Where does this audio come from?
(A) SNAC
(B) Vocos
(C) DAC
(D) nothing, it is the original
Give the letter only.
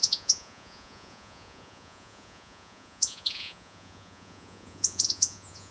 B